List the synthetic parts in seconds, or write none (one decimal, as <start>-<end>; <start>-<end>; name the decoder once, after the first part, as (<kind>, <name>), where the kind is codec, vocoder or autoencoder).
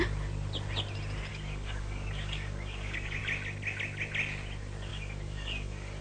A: 1.3-3.2 (codec, DAC); 4.9-6.0